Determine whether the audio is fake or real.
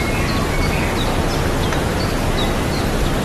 real